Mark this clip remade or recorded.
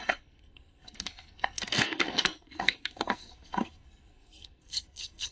remade